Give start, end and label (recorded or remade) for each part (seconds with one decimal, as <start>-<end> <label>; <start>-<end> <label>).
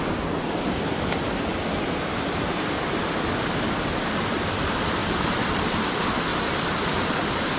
0.0-2.1 recorded; 2.1-3.2 remade; 3.2-5.0 recorded; 5.0-5.8 remade; 5.8-6.3 recorded; 6.3-7.1 remade; 7.1-7.6 recorded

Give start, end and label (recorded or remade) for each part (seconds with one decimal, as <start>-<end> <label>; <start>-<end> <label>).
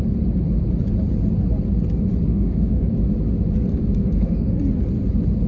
0.0-2.3 recorded; 2.3-2.9 remade; 2.9-4.0 recorded; 4.0-4.6 remade; 4.6-5.5 recorded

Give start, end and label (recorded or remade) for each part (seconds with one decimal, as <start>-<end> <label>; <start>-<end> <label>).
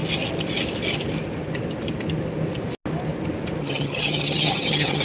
0.0-3.6 recorded; 3.6-5.0 remade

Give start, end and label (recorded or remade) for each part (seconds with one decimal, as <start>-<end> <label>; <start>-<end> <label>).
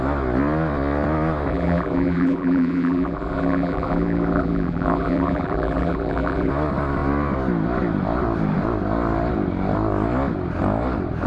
0.0-1.5 recorded; 1.5-6.5 remade; 6.5-11.3 recorded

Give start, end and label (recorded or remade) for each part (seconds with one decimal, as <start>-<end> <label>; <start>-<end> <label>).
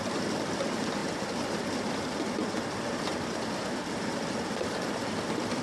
0.0-5.6 recorded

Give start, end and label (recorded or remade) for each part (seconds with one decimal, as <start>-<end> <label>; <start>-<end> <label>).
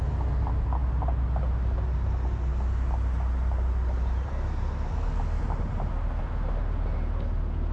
0.0-7.7 recorded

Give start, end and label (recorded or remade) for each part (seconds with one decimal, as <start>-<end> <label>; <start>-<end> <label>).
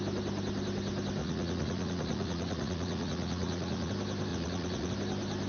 0.0-1.2 recorded; 1.2-3.9 remade; 3.9-4.3 recorded; 4.3-4.9 remade; 4.9-5.5 recorded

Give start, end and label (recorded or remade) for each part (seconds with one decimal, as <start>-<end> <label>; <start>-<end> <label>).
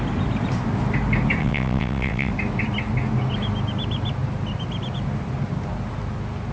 0.0-1.4 recorded; 1.4-2.3 remade; 2.3-6.5 recorded